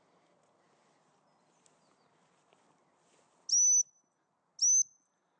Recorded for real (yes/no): yes